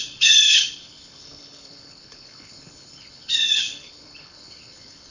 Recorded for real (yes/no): no